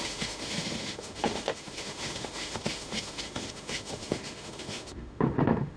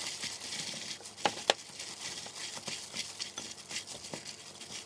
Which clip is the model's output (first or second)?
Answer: first